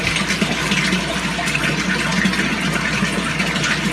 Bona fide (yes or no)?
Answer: yes